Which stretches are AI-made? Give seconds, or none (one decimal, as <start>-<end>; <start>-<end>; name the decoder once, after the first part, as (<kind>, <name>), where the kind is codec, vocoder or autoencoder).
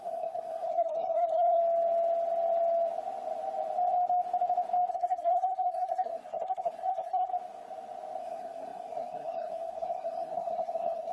0.0-1.6 (codec, SNAC); 4.9-7.3; 8.2-11.1